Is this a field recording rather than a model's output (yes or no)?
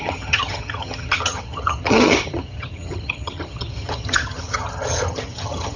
no